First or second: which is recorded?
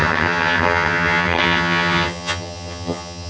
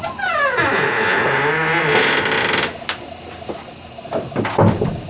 second